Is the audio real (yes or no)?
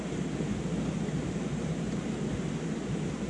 yes